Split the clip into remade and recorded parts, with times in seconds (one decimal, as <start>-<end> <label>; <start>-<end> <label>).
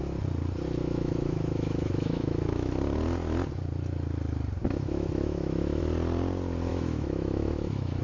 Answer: 0.0-0.8 recorded; 0.8-2.7 remade; 2.7-4.6 recorded; 4.6-5.8 remade; 5.8-6.7 recorded; 6.7-8.0 remade